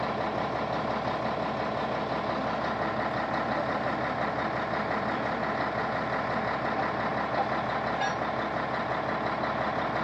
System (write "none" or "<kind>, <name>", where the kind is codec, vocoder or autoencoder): none